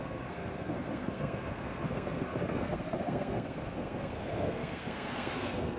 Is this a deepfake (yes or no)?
yes